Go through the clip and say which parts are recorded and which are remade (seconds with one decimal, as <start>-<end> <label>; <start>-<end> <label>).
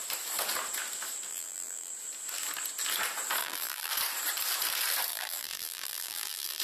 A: 0.0-1.3 recorded; 1.3-1.9 remade; 1.9-3.4 recorded; 3.4-3.9 remade; 3.9-5.1 recorded; 5.1-6.6 remade